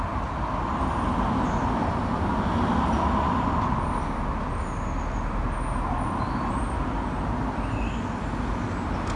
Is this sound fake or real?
real